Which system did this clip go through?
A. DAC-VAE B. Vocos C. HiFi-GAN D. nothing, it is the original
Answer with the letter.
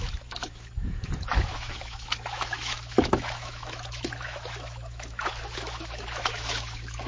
A